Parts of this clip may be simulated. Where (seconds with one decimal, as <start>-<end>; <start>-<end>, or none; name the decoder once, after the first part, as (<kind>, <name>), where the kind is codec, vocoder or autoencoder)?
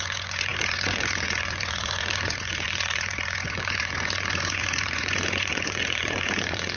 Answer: 0.0-6.8 (vocoder, Vocos)